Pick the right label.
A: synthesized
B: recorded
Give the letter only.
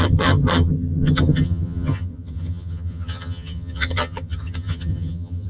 A